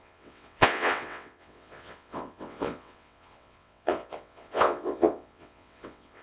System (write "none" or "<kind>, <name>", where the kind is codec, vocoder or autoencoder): vocoder, WaveNeXt